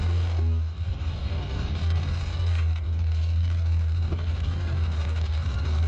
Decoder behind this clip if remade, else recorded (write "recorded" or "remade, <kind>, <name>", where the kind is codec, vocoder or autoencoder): remade, codec, DAC